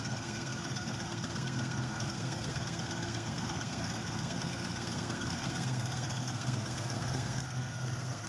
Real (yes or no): no